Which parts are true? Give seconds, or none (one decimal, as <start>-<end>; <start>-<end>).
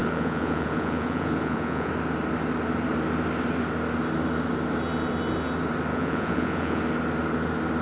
1.9-5.9; 6.8-7.8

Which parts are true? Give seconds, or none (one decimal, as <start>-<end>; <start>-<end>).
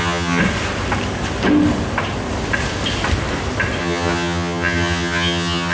0.4-3.8